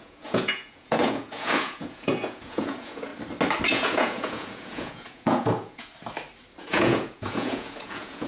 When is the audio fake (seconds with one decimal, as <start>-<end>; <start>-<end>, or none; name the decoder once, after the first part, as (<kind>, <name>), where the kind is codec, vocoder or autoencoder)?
0.0-3.1 (vocoder, Vocos); 3.7-5.9; 6.6-8.3